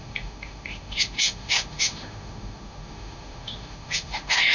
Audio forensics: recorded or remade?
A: remade